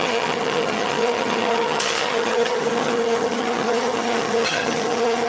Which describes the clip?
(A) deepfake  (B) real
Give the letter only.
A